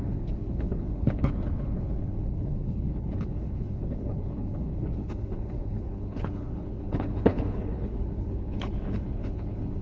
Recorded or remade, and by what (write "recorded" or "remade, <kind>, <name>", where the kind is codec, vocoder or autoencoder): remade, codec, HILCodec